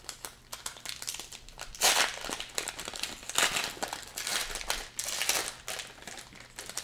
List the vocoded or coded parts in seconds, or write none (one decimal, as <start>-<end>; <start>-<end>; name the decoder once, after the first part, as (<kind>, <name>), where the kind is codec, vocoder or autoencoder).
none